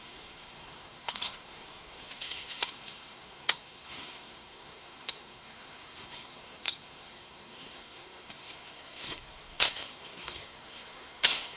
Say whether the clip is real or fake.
fake